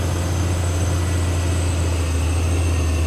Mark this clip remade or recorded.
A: recorded